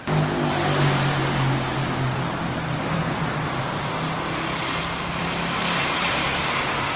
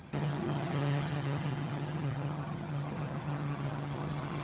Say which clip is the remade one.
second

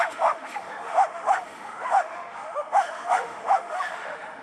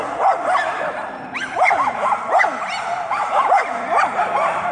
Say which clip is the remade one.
first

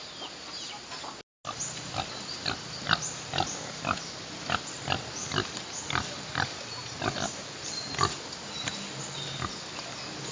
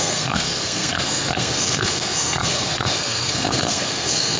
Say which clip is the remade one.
second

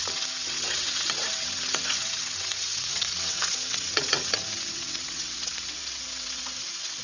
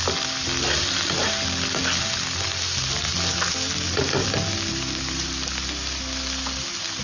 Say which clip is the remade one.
first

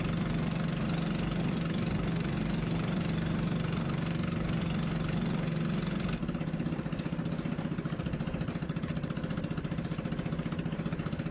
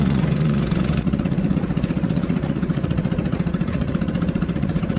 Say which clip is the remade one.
second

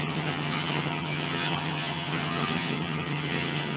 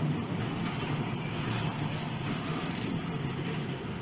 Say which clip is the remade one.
first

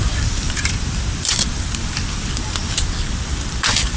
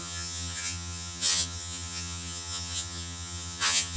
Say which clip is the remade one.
second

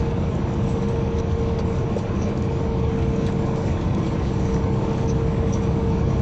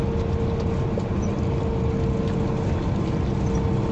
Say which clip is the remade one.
first